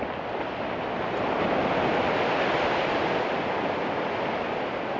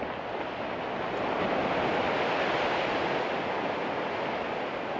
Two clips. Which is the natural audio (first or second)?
second